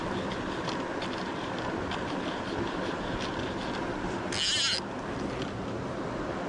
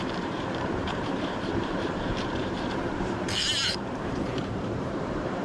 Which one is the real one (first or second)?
first